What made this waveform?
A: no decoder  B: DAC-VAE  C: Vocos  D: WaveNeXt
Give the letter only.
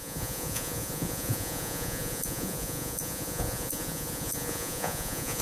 C